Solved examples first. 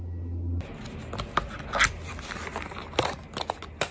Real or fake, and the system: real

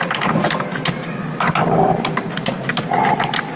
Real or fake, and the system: real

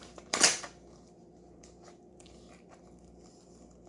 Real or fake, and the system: fake, vocoder, BigVGAN v2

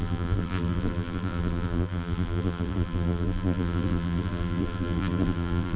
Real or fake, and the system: fake, vocoder, BigVGAN v2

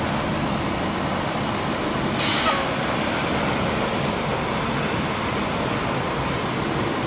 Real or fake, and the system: real